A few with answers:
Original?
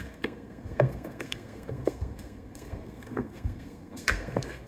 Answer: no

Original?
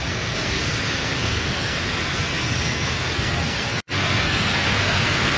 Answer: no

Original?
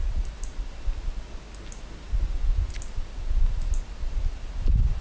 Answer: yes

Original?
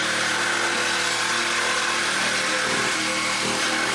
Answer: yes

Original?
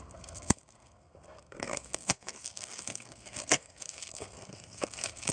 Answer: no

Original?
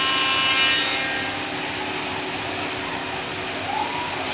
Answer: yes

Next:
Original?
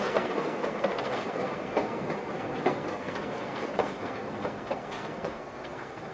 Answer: no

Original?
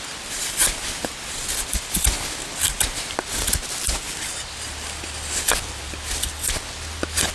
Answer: yes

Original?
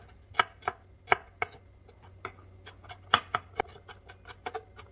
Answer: yes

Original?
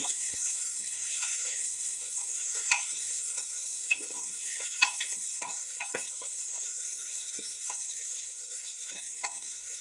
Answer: no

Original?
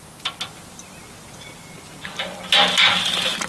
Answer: yes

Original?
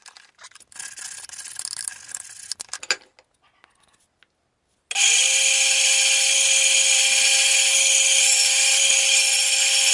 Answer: yes